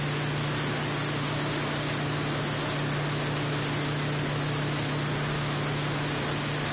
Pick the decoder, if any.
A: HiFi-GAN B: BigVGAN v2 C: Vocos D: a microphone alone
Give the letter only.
D